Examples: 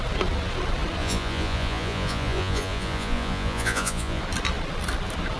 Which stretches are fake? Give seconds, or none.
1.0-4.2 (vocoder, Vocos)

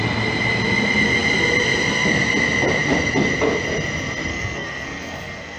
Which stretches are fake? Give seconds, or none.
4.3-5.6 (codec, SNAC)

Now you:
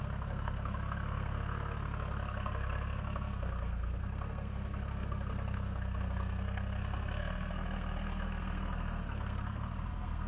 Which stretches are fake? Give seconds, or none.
0.0-10.3 (codec, SNAC)